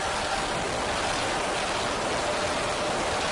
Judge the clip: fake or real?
real